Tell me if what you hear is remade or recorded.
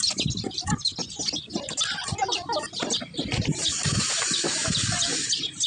recorded